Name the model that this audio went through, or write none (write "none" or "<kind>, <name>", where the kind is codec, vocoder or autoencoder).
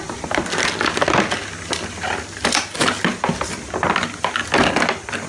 none